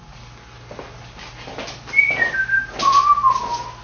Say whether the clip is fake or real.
real